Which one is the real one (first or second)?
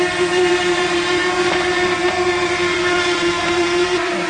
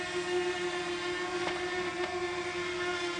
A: second